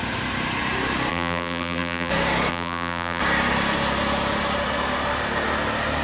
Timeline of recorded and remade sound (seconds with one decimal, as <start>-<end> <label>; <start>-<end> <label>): 0.0-1.1 recorded; 1.1-2.1 remade; 2.1-2.5 recorded; 2.5-3.2 remade; 3.2-6.0 recorded